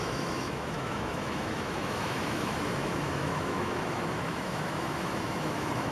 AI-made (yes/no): yes